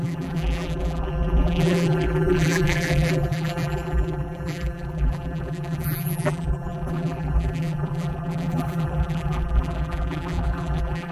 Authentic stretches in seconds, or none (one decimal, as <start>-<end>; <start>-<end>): none